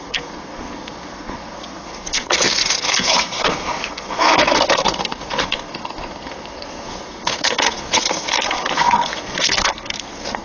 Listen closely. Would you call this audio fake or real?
fake